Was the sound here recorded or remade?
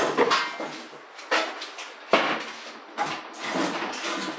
recorded